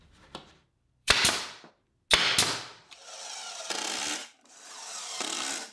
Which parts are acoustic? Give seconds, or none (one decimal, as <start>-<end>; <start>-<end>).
0.0-1.0; 1.7-5.7